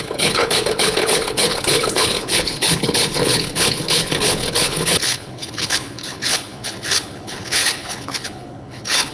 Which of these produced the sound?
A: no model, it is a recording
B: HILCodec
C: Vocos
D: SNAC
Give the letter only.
B